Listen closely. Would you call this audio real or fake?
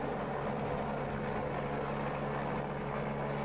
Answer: real